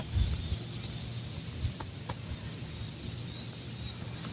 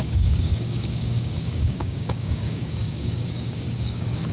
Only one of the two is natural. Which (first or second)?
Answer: first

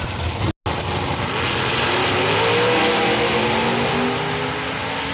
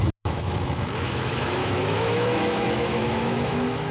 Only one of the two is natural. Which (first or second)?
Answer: first